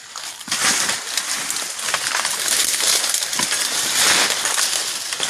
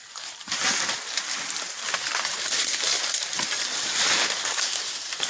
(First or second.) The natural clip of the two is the first